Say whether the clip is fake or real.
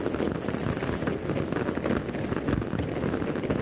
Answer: real